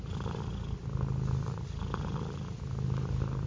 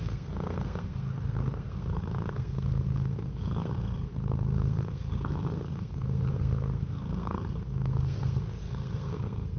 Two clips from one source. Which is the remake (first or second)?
second